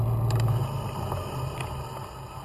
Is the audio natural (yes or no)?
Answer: yes